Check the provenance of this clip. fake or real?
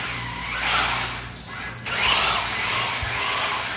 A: real